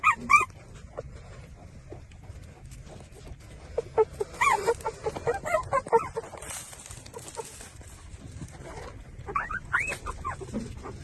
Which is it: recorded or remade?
recorded